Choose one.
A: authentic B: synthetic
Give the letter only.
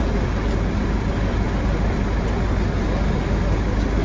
A